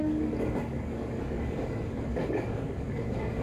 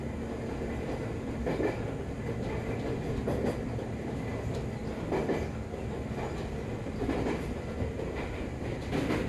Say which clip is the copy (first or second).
first